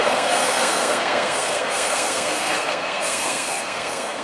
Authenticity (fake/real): fake